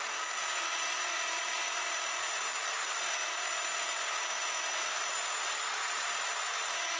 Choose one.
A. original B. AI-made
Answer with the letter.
B